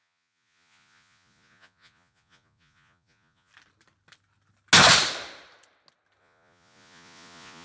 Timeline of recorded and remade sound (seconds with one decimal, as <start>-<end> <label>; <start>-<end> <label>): 0.0-3.5 remade; 3.5-6.2 recorded; 6.2-7.6 remade

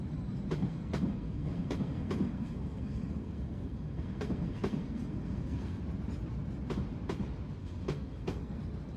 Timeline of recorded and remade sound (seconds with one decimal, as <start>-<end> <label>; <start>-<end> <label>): 0.0-0.6 recorded; 0.6-5.8 remade; 5.8-7.6 recorded; 7.6-8.6 remade; 8.6-9.0 recorded